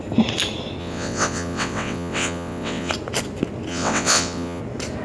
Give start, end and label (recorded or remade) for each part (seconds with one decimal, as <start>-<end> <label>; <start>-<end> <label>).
0.0-0.8 recorded; 0.8-2.9 remade; 2.9-3.7 recorded; 3.7-4.6 remade; 4.6-5.0 recorded

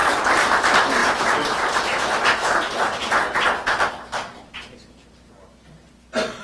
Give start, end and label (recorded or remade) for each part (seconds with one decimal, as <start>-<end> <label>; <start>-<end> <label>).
0.0-0.6 remade; 0.6-6.4 recorded

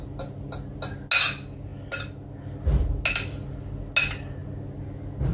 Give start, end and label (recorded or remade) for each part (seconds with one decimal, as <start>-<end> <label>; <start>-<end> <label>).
0.0-5.3 recorded

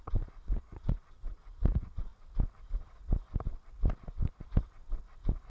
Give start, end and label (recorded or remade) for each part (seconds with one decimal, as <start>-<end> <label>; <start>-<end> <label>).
0.0-2.1 remade; 2.1-5.5 recorded

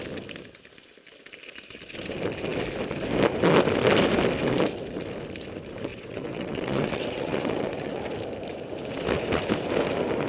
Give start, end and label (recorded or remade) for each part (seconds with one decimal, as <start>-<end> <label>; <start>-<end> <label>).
0.0-5.9 recorded; 5.9-8.0 remade; 8.0-10.3 recorded